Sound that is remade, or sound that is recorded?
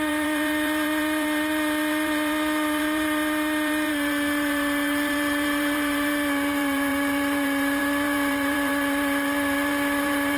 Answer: remade